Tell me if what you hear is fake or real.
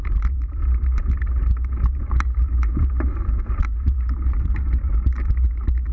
fake